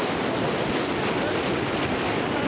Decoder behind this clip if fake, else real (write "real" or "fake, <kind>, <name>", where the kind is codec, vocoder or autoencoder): real